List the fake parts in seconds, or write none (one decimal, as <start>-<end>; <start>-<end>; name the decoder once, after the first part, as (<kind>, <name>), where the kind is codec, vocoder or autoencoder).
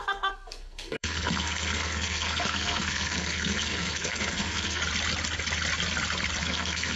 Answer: 0.0-4.8 (codec, SNAC); 6.4-7.0